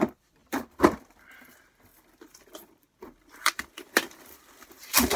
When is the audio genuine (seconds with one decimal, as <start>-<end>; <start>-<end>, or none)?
none